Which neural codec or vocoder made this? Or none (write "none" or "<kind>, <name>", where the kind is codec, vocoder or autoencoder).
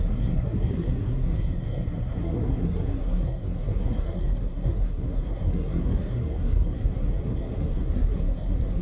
codec, SNAC